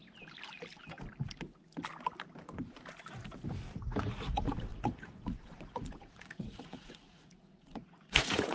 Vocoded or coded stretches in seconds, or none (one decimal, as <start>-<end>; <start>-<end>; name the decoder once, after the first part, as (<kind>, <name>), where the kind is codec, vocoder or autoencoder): 4.0-8.5 (vocoder, Vocos)